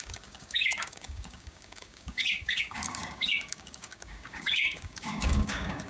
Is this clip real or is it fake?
fake